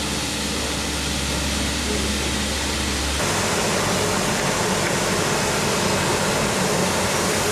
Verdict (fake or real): real